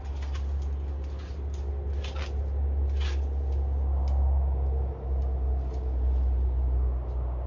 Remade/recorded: recorded